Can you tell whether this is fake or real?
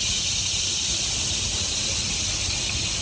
real